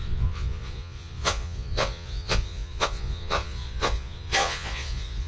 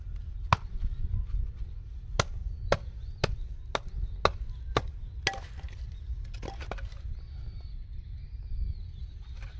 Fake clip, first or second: first